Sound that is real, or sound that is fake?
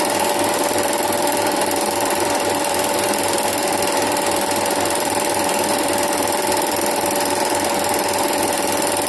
fake